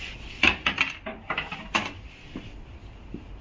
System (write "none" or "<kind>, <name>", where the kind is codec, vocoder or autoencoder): none